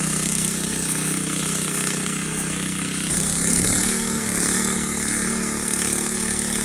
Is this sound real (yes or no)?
no